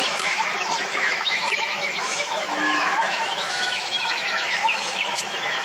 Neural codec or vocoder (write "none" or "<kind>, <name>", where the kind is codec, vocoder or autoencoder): autoencoder, DAC-VAE